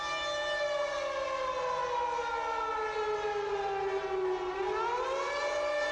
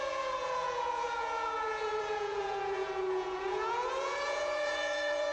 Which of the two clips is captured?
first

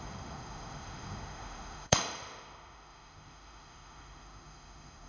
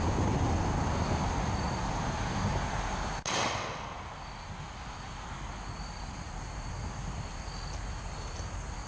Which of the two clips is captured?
second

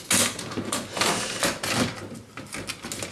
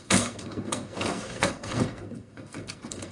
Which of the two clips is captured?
first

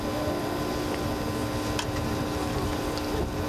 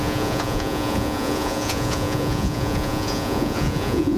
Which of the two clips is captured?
first